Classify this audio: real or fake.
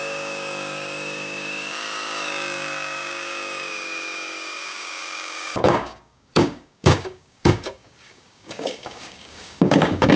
fake